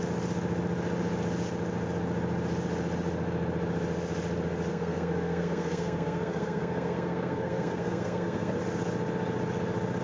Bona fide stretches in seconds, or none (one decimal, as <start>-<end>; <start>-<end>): 0.0-4.7; 8.6-10.0